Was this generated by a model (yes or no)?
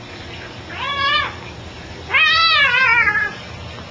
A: no